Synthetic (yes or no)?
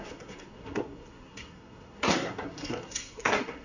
yes